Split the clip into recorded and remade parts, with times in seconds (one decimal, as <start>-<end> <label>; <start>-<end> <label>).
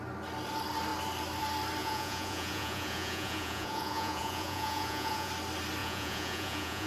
0.0-1.8 recorded; 1.8-5.3 remade; 5.3-5.8 recorded; 5.8-6.9 remade